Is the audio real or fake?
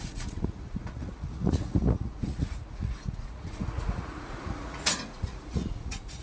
fake